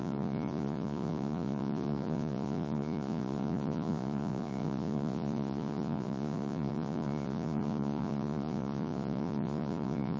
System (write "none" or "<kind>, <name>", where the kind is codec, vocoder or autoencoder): vocoder, Vocos